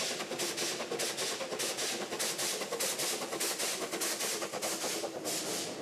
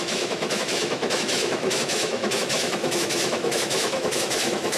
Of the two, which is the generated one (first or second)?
second